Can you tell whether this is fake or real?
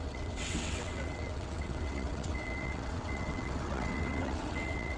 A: fake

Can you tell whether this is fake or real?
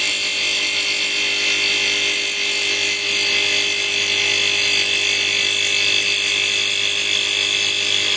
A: real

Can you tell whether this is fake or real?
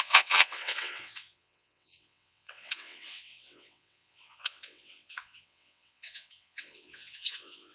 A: fake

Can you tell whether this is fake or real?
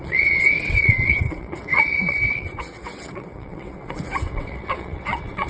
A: fake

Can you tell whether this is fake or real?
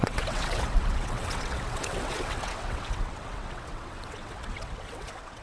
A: fake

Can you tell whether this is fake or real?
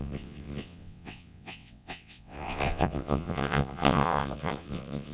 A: fake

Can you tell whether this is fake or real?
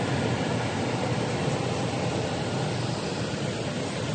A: real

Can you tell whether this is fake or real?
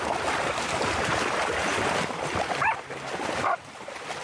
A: real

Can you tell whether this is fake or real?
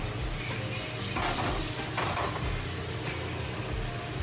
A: real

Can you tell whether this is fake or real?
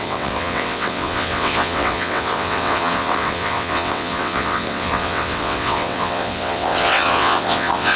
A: fake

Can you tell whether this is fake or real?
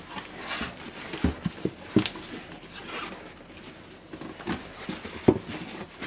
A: real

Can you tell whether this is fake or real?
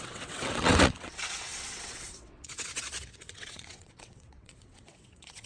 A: fake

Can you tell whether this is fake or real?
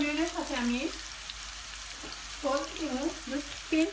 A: real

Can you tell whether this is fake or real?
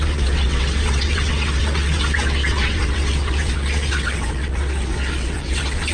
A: fake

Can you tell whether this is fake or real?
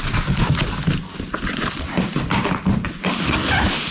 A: real